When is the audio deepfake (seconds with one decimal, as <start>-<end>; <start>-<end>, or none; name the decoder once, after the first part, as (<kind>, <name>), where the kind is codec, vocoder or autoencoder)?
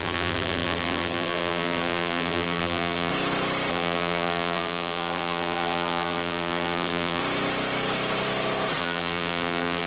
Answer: 0.0-3.1 (vocoder, BigVGAN v2); 3.7-7.2; 8.8-9.9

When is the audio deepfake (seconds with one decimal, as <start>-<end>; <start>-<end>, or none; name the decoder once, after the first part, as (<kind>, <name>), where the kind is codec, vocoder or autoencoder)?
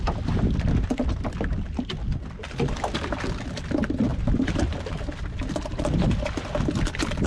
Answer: 4.1-5.0 (vocoder, BigVGAN v2)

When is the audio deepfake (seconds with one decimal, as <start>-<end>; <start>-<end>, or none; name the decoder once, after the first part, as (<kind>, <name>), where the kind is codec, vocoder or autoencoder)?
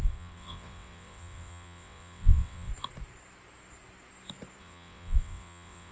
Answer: 0.0-2.7 (vocoder, WaveNeXt); 4.6-5.9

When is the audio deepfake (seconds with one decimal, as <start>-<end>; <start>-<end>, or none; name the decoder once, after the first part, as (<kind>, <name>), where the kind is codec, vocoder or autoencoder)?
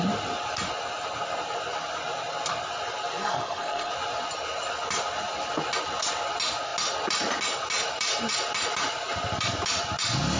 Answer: 3.2-3.9 (codec, SNAC)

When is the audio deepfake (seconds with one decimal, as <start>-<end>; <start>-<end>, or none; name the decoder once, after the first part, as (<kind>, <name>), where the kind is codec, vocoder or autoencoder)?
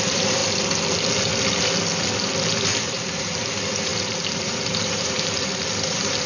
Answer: 0.0-0.4 (vocoder, BigVGAN v2); 2.7-6.3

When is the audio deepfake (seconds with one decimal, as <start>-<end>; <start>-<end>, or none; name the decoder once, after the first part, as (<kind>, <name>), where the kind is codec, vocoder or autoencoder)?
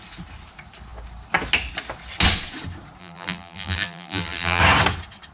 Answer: 3.0-4.6 (vocoder, BigVGAN v2)